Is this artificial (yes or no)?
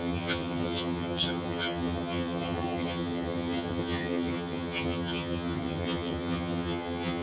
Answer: yes